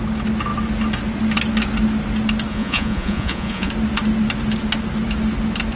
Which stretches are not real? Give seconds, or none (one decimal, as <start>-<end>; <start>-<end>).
2.5-3.7